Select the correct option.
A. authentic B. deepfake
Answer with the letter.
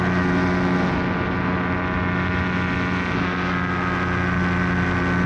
A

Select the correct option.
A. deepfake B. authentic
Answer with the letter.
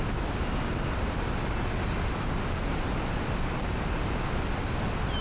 B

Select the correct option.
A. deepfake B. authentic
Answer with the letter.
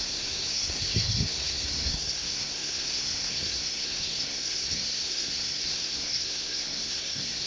A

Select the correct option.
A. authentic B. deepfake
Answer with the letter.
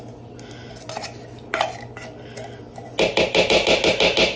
A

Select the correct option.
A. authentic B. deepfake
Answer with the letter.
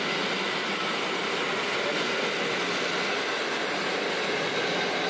A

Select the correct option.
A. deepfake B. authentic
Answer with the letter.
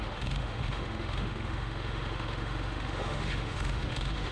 A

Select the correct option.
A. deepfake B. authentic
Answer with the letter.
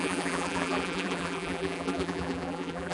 A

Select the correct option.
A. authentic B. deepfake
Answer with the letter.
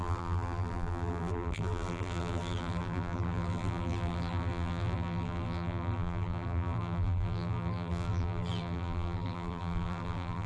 B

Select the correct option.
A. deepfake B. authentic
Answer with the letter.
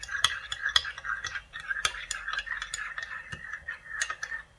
A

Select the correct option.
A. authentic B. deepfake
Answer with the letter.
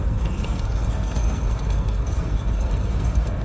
B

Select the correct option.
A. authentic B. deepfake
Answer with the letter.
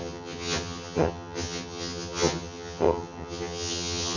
B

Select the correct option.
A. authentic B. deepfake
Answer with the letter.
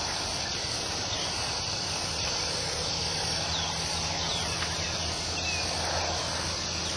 A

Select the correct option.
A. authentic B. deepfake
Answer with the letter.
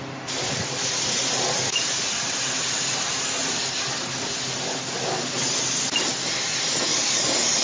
A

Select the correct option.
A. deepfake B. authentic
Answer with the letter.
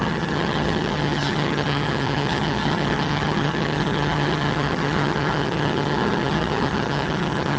A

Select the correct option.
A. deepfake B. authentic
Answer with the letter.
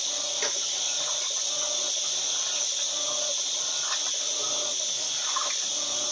B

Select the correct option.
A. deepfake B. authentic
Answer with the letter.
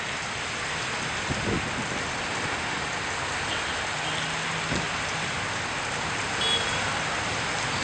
B